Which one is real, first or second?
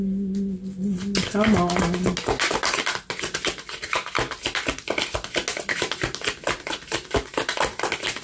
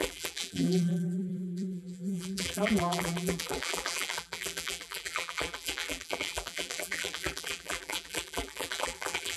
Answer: first